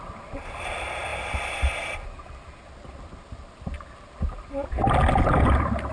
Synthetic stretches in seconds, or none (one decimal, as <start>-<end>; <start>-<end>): none